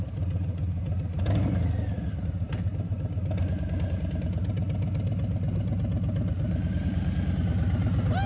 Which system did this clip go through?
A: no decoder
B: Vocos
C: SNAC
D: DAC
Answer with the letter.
A